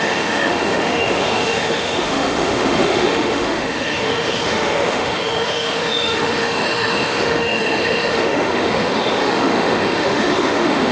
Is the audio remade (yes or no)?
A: yes